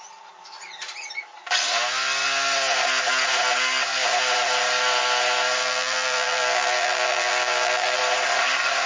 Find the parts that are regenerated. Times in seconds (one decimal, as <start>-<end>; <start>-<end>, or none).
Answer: 5.6-8.0